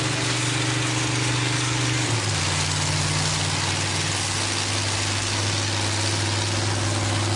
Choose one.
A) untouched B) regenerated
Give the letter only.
A